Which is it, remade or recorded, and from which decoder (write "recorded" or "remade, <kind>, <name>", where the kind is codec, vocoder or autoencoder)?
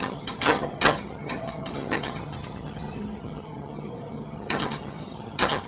remade, vocoder, HiFi-GAN